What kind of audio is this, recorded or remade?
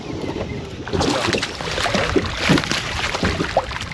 recorded